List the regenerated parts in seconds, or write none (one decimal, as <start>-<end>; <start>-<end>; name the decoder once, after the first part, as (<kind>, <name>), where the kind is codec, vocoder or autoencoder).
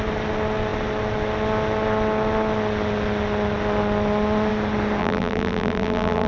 5.0-6.3 (vocoder, BigVGAN v2)